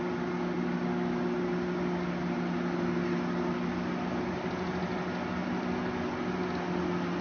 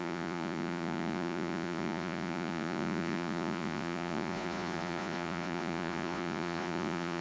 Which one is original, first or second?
first